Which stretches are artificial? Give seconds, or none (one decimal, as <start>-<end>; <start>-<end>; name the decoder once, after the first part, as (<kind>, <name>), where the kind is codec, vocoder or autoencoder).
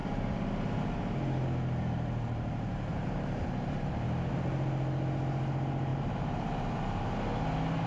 0.0-0.8 (vocoder, BigVGAN v2); 2.9-3.8; 5.9-7.0